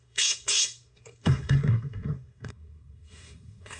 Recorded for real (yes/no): no